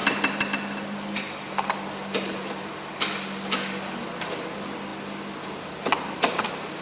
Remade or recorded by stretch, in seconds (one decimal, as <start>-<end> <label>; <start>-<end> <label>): 0.0-6.8 recorded